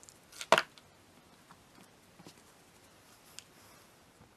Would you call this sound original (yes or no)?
yes